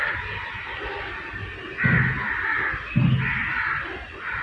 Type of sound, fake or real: real